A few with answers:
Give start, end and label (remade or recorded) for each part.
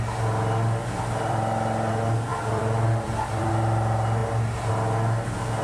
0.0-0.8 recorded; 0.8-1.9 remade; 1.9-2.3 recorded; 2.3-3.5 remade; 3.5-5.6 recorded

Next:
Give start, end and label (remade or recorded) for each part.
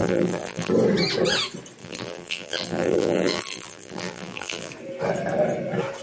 0.0-0.7 remade; 0.7-1.8 recorded; 1.8-4.7 remade; 4.7-6.0 recorded